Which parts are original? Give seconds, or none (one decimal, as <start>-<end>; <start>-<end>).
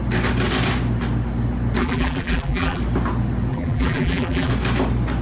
0.0-1.8; 2.8-3.5; 4.5-5.2